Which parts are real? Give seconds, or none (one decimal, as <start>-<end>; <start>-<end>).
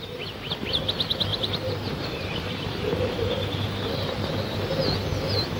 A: 0.0-1.3; 4.3-5.6